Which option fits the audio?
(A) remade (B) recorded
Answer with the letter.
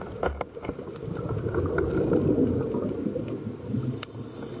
B